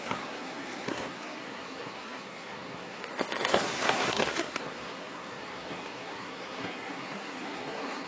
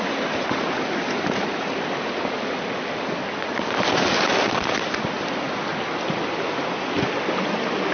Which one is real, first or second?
second